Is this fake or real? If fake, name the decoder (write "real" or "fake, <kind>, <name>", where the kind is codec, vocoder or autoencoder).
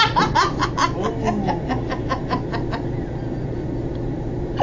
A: real